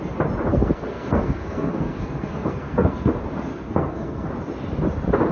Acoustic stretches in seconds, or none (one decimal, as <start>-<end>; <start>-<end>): 0.0-0.5; 3.1-3.5; 4.3-5.3